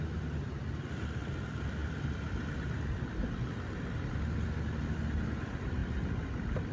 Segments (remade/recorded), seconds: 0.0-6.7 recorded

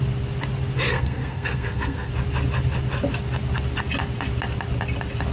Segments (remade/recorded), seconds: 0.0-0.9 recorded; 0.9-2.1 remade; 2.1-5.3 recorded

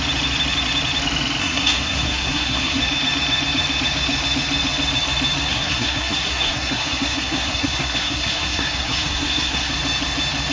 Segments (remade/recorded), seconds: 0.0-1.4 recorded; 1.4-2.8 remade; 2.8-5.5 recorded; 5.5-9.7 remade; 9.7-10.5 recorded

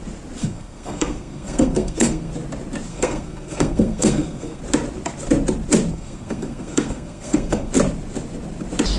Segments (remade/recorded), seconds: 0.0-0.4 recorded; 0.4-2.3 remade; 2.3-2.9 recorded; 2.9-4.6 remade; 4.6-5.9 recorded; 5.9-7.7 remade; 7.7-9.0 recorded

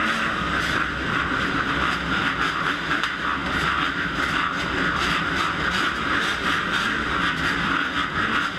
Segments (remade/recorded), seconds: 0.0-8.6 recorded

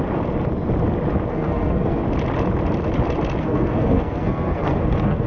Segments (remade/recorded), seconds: 0.0-1.3 recorded; 1.3-2.0 remade; 2.0-3.4 recorded; 3.4-5.3 remade

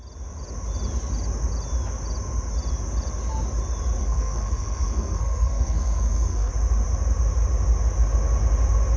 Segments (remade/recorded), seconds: 0.0-4.0 recorded; 4.0-6.5 remade; 6.5-9.0 recorded

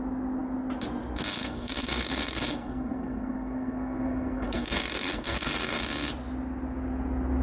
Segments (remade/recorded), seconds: 0.0-1.4 recorded; 1.4-5.8 remade; 5.8-7.4 recorded